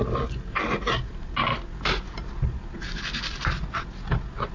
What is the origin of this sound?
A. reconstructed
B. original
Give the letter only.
B